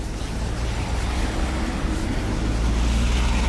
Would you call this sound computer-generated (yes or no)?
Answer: no